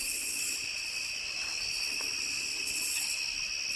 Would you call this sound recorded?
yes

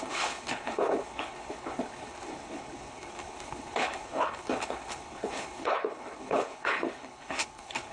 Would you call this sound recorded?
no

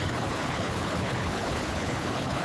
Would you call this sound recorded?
no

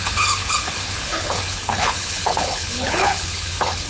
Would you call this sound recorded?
no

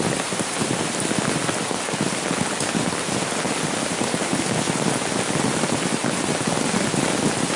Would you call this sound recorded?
yes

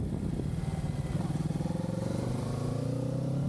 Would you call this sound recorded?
yes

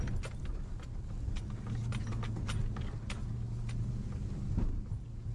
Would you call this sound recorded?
yes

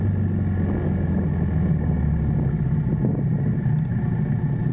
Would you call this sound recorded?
yes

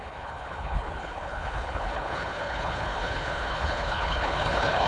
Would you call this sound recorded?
no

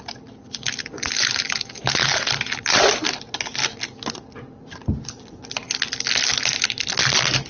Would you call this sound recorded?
yes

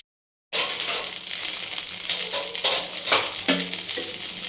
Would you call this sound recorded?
yes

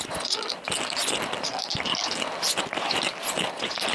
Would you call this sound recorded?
yes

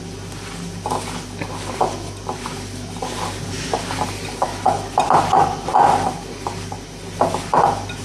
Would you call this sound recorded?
yes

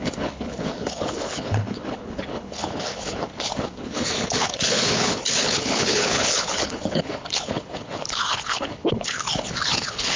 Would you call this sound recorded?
no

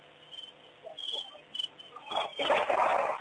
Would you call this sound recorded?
yes